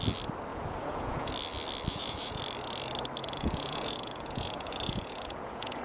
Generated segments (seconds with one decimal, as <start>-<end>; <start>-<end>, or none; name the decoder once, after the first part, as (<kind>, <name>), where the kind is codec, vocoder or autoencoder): 0.5-1.3 (vocoder, Vocos); 1.9-2.4; 3.2-5.8